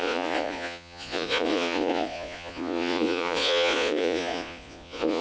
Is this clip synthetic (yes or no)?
yes